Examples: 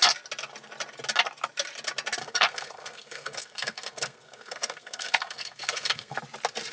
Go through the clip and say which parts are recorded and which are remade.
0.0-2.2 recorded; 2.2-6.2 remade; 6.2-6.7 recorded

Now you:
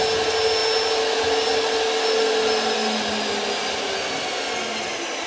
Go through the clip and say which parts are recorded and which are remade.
0.0-5.3 recorded

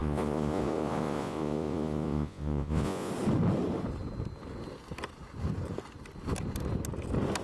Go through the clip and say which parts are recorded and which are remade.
0.0-3.1 remade; 3.1-7.4 recorded

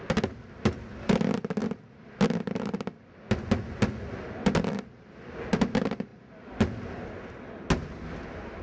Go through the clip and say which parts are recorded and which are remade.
0.0-8.6 recorded